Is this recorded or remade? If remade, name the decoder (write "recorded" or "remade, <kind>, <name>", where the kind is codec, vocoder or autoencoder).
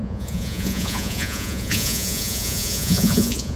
remade, vocoder, Vocos